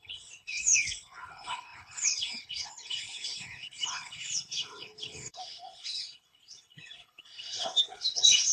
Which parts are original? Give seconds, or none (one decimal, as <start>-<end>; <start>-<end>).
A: none